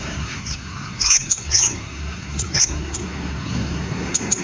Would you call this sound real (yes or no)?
no